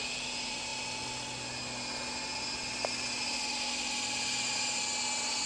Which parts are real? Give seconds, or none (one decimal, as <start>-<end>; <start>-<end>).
0.0-5.5